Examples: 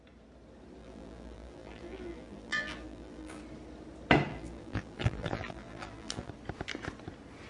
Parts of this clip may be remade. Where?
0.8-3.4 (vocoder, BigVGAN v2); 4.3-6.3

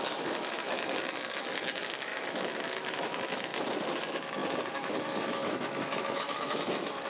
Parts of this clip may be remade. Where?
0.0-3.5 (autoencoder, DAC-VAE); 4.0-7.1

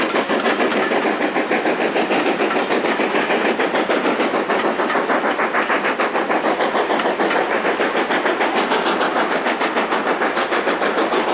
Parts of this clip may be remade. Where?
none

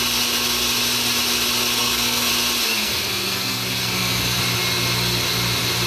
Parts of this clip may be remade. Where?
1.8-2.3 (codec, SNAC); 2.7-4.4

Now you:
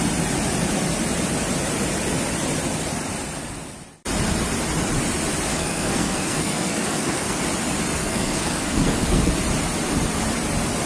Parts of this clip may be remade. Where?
5.5-7.4 (codec, SNAC); 8.0-9.3

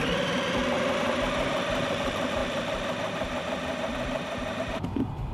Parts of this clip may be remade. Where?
0.0-0.6 (vocoder, BigVGAN v2); 1.1-5.3

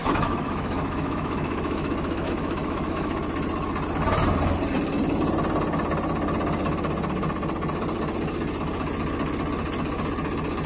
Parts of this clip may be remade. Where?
0.0-3.2 (autoencoder, DAC-VAE)